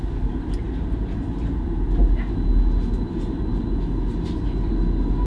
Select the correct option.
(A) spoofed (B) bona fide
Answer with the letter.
B